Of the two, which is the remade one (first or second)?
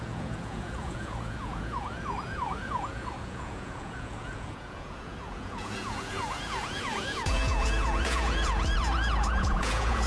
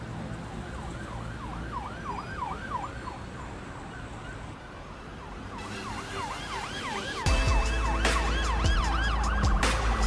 first